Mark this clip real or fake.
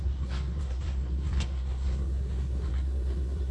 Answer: fake